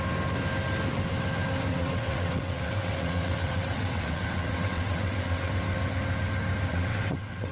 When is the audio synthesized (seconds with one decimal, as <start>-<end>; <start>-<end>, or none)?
1.7-5.5; 6.7-7.5